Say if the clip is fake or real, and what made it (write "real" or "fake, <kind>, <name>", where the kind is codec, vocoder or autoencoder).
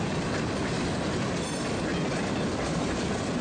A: real